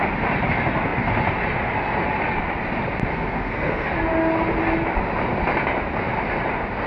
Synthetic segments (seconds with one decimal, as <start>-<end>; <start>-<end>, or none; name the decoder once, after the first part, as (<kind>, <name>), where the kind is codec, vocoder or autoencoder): 3.1-3.9 (codec, SNAC)